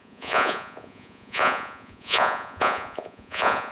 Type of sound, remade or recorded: remade